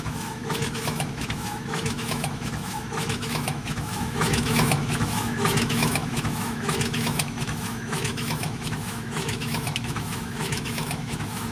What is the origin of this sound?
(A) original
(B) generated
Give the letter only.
B